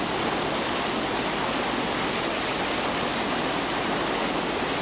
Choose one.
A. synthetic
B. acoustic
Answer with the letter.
B